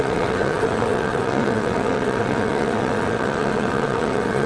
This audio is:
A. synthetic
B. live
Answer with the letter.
A